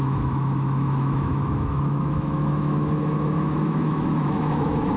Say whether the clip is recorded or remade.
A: remade